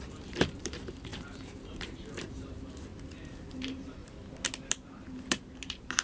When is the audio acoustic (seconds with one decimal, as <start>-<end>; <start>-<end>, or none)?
2.9-3.5; 4.0-4.7